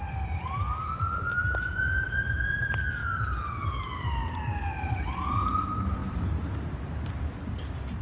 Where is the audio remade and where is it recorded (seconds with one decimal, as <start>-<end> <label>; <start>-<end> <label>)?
0.0-8.0 recorded